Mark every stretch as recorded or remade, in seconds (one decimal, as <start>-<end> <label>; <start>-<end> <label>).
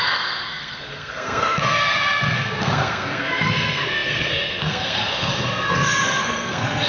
0.0-6.9 remade